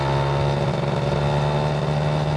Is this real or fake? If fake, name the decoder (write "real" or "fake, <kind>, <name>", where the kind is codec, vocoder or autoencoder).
real